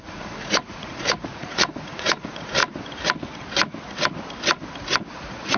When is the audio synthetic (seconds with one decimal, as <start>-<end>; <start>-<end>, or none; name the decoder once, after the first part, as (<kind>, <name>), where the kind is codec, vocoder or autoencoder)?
0.0-2.6 (vocoder, Vocos); 5.1-5.6